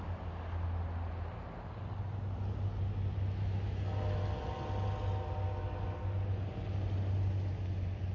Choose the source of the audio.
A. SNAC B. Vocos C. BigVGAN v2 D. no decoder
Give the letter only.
D